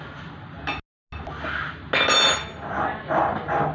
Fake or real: real